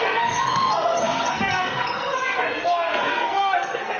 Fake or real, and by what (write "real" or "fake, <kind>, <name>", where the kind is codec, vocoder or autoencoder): fake, codec, SNAC